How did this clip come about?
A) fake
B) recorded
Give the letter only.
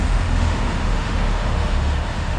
A